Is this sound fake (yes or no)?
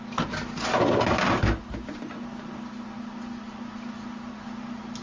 no